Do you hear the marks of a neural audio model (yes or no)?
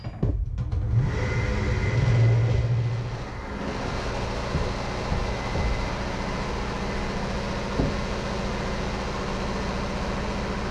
no